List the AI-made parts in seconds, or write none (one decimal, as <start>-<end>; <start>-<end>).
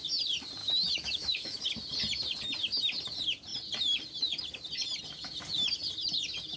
0.6-1.6